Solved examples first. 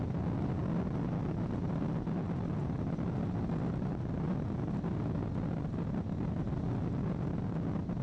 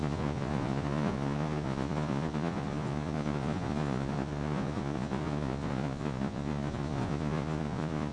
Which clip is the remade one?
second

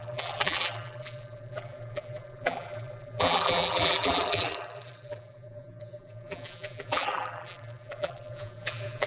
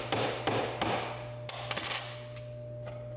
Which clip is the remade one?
first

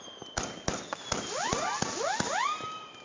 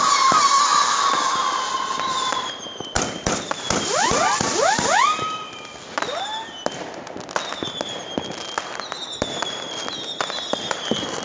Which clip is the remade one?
second